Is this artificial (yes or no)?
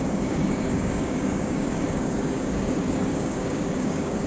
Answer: yes